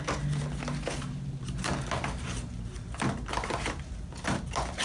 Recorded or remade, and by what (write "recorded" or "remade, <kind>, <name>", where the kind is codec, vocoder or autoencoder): recorded